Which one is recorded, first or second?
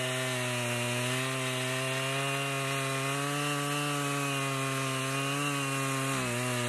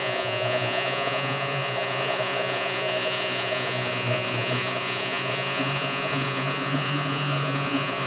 first